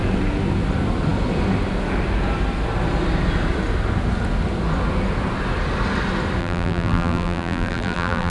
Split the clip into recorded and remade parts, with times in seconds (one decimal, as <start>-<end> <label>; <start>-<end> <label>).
0.0-6.4 recorded; 6.4-8.3 remade